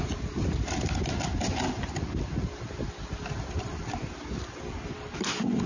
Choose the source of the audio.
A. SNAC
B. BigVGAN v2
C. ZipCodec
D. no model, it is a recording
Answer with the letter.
D